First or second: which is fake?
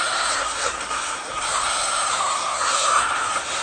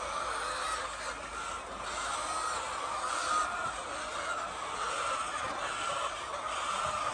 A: first